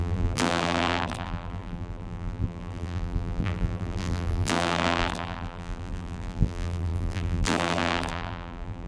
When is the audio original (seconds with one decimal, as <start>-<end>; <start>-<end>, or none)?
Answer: none